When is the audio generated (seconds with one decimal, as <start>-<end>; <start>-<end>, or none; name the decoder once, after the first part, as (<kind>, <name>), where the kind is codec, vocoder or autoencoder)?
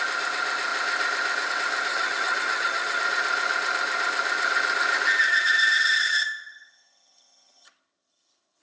1.9-3.0 (vocoder, HiFi-GAN); 5.2-8.6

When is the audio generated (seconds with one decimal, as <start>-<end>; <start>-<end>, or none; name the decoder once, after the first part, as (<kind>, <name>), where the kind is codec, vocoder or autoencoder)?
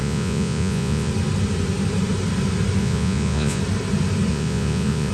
0.0-1.1 (vocoder, Vocos); 2.8-3.6; 4.3-5.1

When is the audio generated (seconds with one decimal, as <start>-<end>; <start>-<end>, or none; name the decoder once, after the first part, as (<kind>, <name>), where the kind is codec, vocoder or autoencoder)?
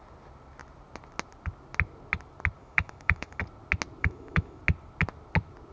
2.6-3.4 (autoencoder, DAC-VAE); 4.0-4.6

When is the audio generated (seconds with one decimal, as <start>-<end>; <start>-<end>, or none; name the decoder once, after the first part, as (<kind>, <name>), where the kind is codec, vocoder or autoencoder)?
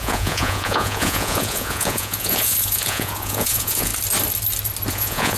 0.0-3.9 (vocoder, Vocos); 4.9-5.4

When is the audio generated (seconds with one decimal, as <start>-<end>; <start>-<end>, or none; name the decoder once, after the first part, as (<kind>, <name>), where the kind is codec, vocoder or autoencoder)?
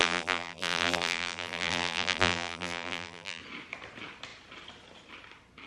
0.0-3.4 (vocoder, BigVGAN v2)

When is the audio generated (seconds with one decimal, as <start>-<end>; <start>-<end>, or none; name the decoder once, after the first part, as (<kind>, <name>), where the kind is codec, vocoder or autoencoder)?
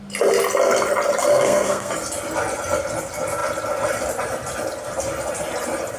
1.3-1.9 (codec, SNAC)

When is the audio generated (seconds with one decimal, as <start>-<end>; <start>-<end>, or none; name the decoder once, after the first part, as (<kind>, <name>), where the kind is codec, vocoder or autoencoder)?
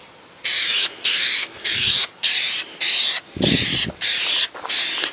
0.6-2.3 (autoencoder, DAC-VAE)